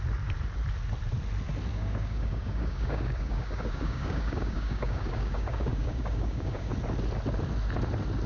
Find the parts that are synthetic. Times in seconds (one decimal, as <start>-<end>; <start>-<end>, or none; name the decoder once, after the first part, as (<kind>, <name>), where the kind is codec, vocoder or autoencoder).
1.7-6.7 (codec, DAC)